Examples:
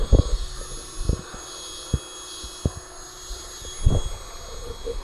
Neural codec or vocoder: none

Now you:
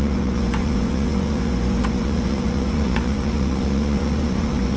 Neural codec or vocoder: vocoder, Vocos